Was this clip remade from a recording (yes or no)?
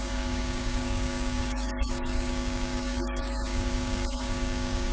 yes